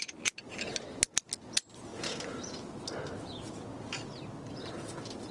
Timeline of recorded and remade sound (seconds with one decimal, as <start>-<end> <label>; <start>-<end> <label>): 0.0-5.3 recorded